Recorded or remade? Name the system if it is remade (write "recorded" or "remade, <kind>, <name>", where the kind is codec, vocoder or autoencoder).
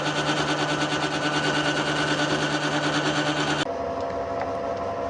recorded